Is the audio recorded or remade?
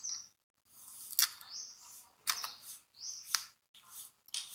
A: recorded